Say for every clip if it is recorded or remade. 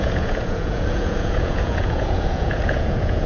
remade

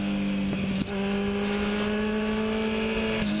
recorded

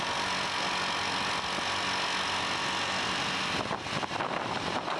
recorded